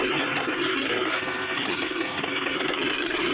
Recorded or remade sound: remade